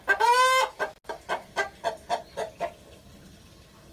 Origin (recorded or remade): recorded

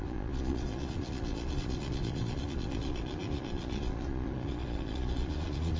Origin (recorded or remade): remade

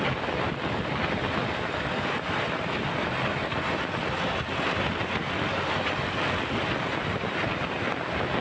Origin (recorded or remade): recorded